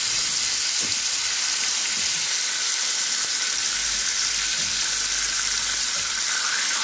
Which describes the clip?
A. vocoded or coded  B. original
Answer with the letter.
A